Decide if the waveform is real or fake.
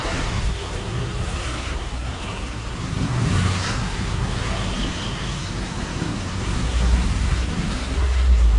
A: fake